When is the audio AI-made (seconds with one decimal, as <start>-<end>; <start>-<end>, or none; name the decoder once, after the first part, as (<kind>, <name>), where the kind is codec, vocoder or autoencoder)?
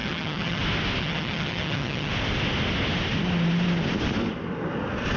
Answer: 0.0-0.6 (vocoder, HiFi-GAN); 1.0-2.1